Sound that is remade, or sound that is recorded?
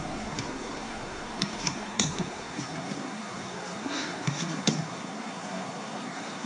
remade